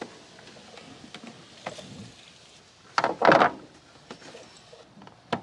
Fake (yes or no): no